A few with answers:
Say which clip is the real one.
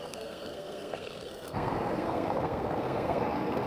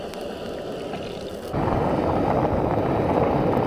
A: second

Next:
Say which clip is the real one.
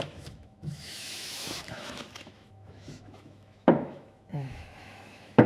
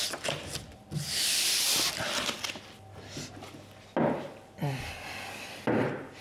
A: second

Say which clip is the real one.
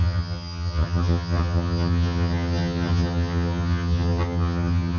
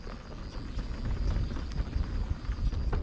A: second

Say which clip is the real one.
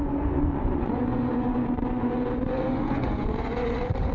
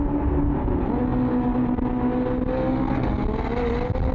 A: second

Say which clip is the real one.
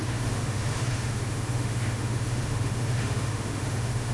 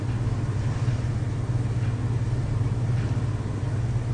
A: second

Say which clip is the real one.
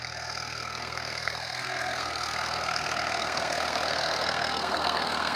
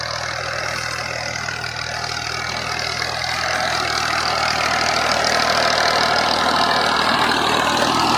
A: second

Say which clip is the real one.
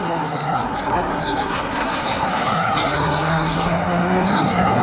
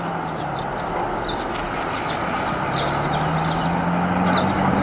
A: second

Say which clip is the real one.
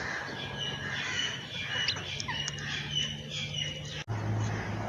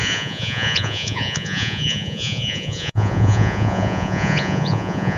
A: first